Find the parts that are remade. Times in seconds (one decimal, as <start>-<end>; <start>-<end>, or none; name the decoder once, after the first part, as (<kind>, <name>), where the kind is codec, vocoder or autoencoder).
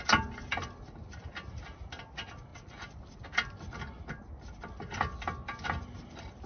none